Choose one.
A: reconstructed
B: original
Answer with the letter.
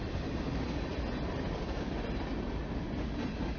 B